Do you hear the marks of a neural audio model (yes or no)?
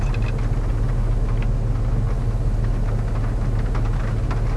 no